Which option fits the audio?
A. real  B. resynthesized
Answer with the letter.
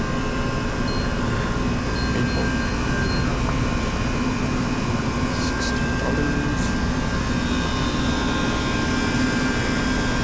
A